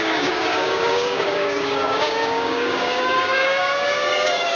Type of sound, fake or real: fake